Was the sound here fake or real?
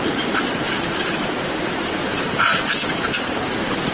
fake